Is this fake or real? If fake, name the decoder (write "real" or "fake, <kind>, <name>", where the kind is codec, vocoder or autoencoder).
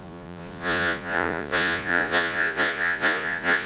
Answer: fake, vocoder, Vocos